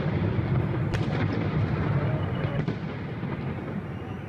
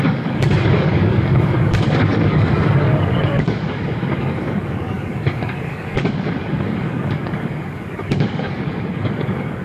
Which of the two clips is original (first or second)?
first